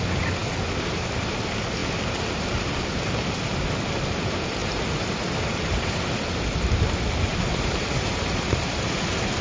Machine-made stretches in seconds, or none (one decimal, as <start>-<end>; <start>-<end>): 4.6-6.0; 7.3-8.8